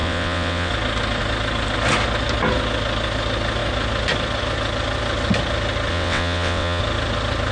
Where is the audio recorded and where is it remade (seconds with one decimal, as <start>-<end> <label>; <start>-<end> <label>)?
0.0-0.7 remade; 0.7-5.9 recorded; 5.9-6.8 remade; 6.8-7.5 recorded